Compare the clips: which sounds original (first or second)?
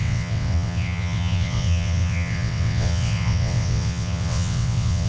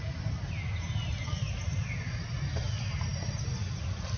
second